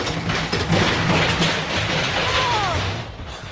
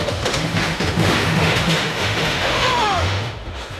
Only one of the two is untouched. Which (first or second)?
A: first